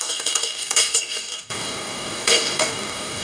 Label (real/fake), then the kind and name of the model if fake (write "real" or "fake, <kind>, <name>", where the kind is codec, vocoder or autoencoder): fake, codec, DAC